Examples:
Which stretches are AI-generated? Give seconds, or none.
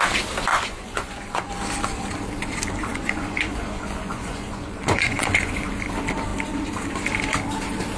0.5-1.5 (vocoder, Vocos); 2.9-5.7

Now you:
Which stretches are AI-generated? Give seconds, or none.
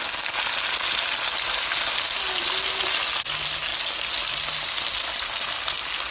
none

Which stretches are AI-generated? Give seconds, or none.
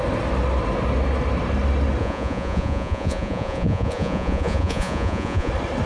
2.0-5.5 (vocoder, Vocos)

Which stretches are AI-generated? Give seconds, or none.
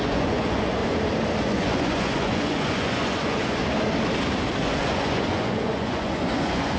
0.0-0.8 (vocoder, Vocos); 1.4-3.6; 4.6-6.8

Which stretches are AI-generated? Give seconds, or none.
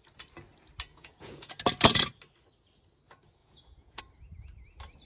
0.9-1.6 (vocoder, Vocos); 3.4-4.0